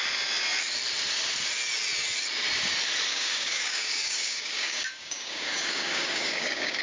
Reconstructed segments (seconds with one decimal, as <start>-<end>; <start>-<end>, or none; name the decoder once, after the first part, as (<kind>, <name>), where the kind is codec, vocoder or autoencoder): 3.1-6.8 (codec, DAC)